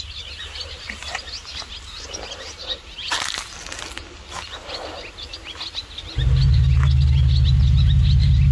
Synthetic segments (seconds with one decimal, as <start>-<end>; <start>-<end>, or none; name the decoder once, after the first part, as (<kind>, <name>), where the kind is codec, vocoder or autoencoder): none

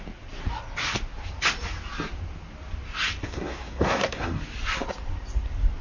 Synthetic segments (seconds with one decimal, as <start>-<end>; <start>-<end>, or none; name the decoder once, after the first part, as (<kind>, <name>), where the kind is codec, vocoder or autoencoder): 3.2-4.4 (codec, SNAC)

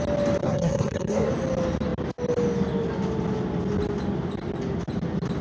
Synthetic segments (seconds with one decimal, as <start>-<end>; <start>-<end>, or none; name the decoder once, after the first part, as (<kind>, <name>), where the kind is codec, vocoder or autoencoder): 0.4-1.3 (codec, SNAC)

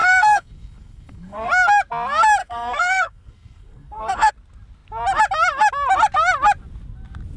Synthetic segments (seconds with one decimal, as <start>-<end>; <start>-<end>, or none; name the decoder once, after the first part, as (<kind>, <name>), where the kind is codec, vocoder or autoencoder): 0.0-1.5 (codec, SNAC); 2.4-4.3

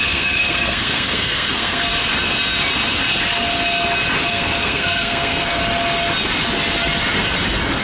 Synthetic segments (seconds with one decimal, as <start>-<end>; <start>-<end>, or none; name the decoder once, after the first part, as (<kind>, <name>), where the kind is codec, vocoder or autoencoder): 0.0-1.9 (codec, SNAC); 4.3-5.6

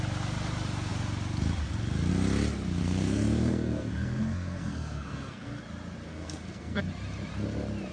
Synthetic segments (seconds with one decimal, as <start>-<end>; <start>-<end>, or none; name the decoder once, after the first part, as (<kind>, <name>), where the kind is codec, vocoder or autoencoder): 2.8-5.6 (codec, SNAC); 6.1-6.8